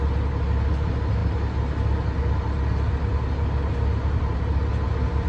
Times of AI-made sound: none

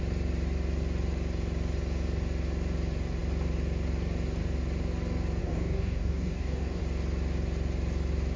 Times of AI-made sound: 5.4-6.8 (codec, DAC)

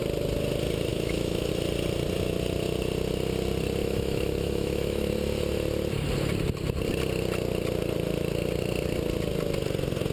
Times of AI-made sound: 0.9-1.5 (autoencoder, DAC-VAE); 3.8-5.1